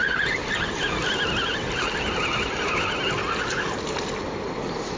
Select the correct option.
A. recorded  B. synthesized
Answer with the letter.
A